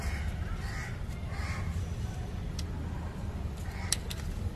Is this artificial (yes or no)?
no